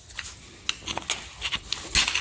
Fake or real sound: real